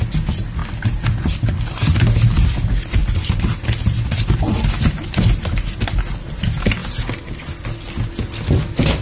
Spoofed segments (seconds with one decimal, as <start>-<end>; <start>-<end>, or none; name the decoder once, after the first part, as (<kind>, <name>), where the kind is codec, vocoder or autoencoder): none